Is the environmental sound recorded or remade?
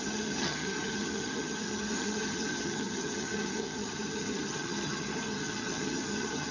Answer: remade